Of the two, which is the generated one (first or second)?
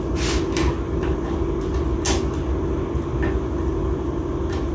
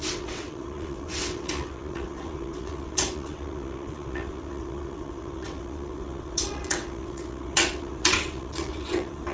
second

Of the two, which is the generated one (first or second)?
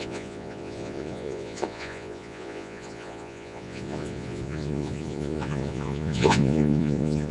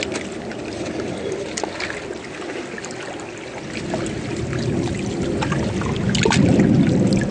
first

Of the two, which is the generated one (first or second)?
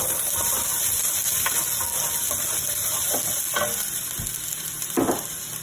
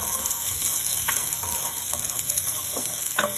second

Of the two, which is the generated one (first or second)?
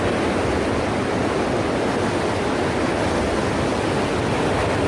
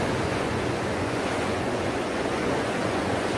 second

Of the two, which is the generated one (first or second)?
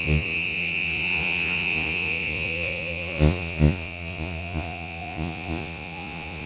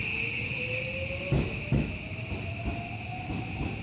first